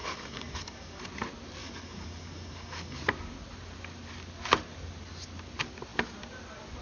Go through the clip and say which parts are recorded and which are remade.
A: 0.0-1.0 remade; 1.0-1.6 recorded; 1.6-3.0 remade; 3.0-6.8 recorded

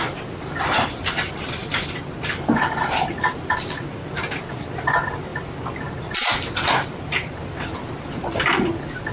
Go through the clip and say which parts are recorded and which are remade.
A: 0.0-9.1 recorded

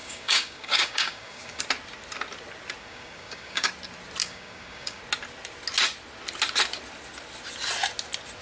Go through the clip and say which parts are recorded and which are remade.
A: 0.0-1.6 remade; 1.6-2.8 recorded; 2.8-3.7 remade; 3.7-4.2 recorded; 4.2-5.0 remade; 5.0-8.4 recorded

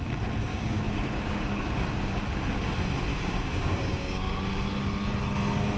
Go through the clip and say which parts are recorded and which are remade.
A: 0.0-0.5 recorded; 0.5-2.2 remade; 2.2-3.1 recorded; 3.1-4.4 remade; 4.4-5.8 recorded

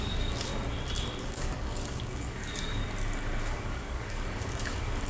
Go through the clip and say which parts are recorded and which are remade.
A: 0.0-0.5 remade; 0.5-1.2 recorded; 1.2-2.8 remade; 2.8-3.4 recorded; 3.4-5.1 remade

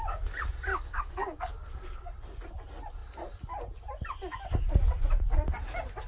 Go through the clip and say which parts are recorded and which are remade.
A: 0.0-0.7 recorded; 0.7-2.1 remade; 2.1-6.1 recorded

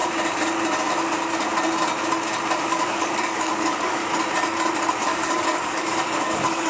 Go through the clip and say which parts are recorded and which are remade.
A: 0.0-2.7 recorded; 2.7-4.0 remade; 4.0-5.0 recorded; 5.0-6.7 remade

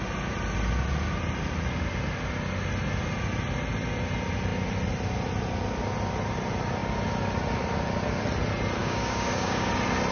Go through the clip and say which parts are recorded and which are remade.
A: 0.0-8.8 recorded; 8.8-9.7 remade; 9.7-10.1 recorded